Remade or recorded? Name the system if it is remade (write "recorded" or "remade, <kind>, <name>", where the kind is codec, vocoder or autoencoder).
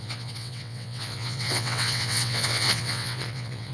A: remade, vocoder, WaveNeXt